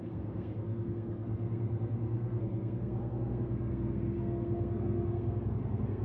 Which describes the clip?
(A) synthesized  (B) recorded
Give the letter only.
A